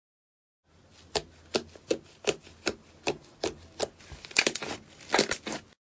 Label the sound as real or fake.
real